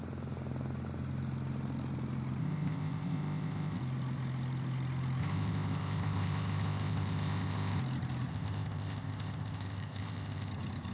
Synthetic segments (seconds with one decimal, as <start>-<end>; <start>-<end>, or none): 2.4-3.8; 5.2-7.8; 8.3-10.5